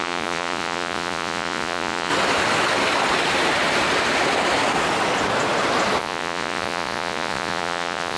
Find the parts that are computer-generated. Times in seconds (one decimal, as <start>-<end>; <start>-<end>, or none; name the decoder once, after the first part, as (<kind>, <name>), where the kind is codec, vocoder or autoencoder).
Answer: 0.0-2.1 (vocoder, Vocos); 6.0-8.2